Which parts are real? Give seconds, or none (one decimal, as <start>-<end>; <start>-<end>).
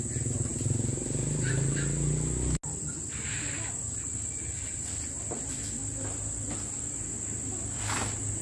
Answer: 0.0-8.4